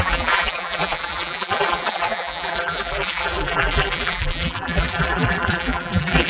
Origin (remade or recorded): remade